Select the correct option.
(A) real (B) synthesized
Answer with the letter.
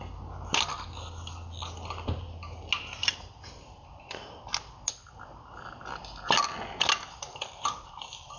A